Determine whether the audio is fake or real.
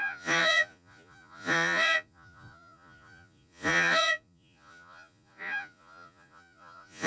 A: fake